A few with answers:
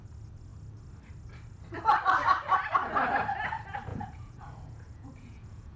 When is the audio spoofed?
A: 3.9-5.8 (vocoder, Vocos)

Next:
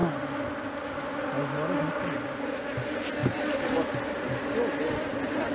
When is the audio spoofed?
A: none

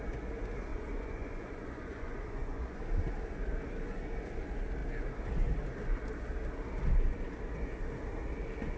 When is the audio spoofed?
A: 0.7-2.8 (vocoder, Vocos)